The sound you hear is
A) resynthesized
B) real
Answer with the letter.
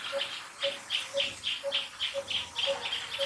B